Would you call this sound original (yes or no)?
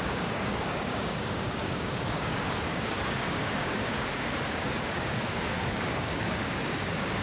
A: no